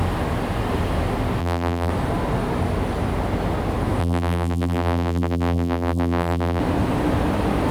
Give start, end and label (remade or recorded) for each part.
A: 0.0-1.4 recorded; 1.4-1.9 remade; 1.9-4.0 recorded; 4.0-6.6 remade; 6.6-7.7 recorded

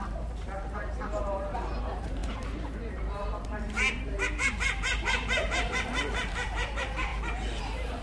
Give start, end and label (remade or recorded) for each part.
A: 0.0-7.1 remade; 7.1-7.6 recorded; 7.6-8.0 remade

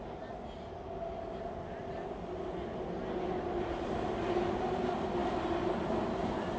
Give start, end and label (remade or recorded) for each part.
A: 0.0-6.6 recorded

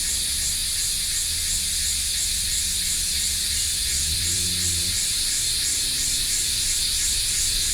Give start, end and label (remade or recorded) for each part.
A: 0.0-0.6 remade; 0.6-2.2 recorded; 2.2-4.4 remade; 4.4-6.2 recorded; 6.2-7.7 remade

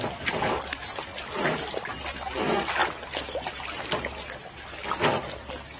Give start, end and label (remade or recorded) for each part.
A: 0.0-1.1 remade; 1.1-1.7 recorded; 1.7-2.8 remade; 2.8-4.0 recorded; 4.0-4.4 remade; 4.4-5.8 recorded

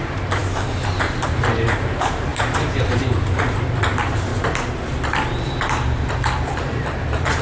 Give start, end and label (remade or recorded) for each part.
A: 0.0-4.3 remade; 4.3-6.0 recorded; 6.0-7.4 remade

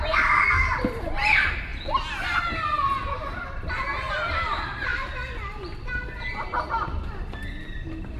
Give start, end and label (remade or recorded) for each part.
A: 0.0-8.2 recorded